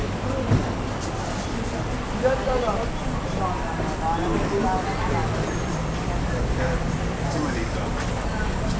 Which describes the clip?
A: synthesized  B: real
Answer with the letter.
A